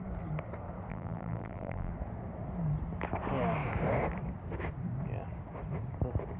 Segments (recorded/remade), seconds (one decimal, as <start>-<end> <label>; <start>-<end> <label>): 0.0-0.9 recorded; 0.9-1.9 remade; 1.9-6.4 recorded